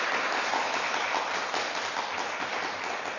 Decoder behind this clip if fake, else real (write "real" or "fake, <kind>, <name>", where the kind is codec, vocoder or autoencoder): real